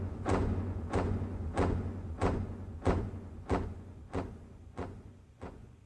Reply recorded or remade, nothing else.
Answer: remade